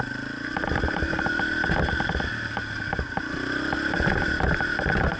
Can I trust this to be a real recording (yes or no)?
yes